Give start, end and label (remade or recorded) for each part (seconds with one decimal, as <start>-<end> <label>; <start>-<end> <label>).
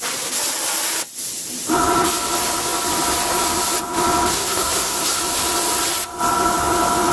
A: 0.0-4.3 recorded; 4.3-5.2 remade; 5.2-7.1 recorded